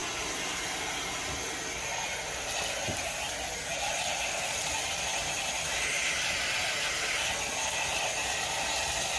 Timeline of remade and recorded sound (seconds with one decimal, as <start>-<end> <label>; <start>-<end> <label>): 0.0-9.2 recorded